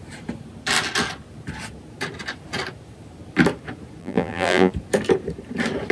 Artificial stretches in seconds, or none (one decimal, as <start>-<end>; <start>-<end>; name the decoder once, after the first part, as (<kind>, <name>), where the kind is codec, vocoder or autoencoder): 4.0-4.7 (vocoder, BigVGAN v2)